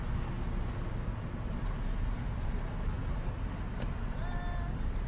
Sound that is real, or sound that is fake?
real